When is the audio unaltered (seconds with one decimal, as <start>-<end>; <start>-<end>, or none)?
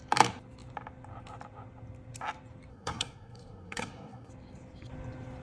0.0-2.7; 4.3-5.4